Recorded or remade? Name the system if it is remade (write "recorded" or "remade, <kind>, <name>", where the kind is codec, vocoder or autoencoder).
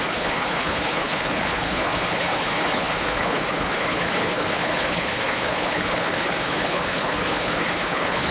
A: remade, codec, HILCodec